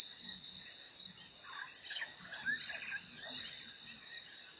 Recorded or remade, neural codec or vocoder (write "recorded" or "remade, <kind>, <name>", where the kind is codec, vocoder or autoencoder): recorded